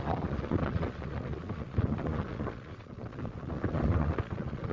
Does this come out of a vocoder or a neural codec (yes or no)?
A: yes